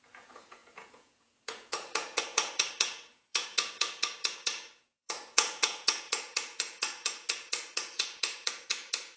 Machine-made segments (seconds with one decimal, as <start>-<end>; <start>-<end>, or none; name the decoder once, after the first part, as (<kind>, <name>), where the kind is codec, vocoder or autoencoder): 0.0-9.2 (vocoder, Vocos)